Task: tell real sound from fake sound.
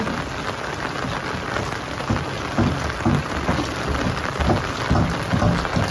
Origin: real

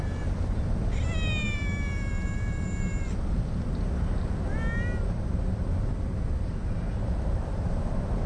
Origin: real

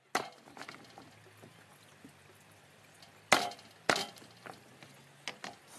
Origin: real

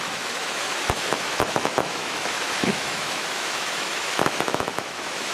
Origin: fake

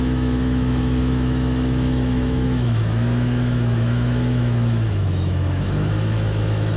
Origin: fake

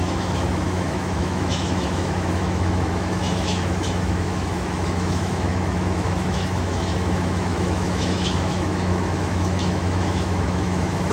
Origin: fake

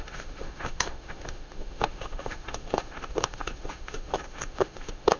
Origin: fake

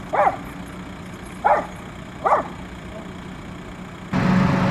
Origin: real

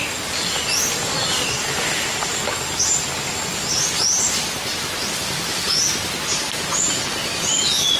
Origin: real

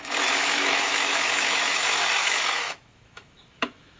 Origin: fake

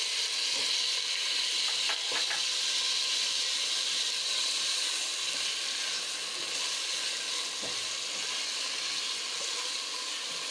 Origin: real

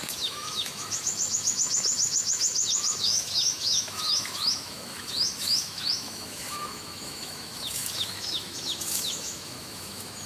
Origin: fake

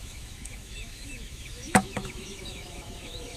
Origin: fake